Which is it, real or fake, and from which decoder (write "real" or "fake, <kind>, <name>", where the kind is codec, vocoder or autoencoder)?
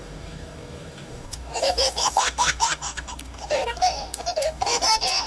fake, codec, DAC